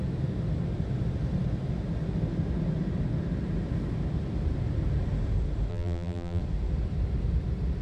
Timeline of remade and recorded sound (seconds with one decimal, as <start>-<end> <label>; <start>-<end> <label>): 0.0-5.7 recorded; 5.7-6.4 remade; 6.4-7.8 recorded